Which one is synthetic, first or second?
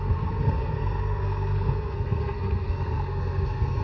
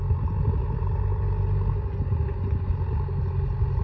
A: first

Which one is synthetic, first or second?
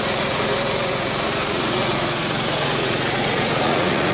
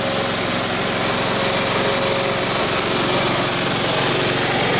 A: first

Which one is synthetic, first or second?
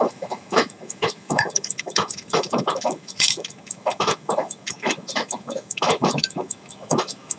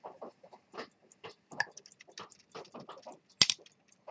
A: first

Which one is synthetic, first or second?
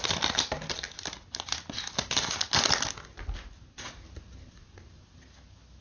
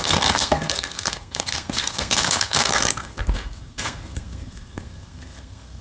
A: second